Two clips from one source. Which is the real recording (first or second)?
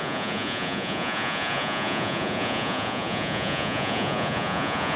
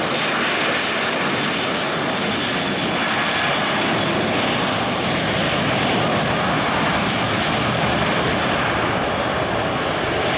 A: second